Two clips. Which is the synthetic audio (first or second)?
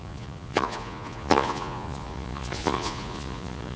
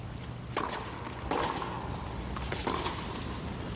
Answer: first